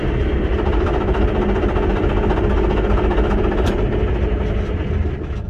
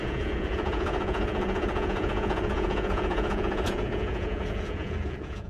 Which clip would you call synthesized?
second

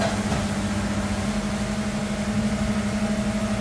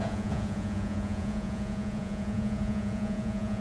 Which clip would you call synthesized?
second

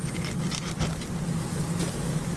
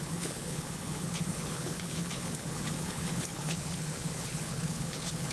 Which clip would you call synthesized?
second